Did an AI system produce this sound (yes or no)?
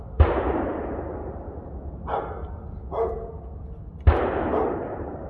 no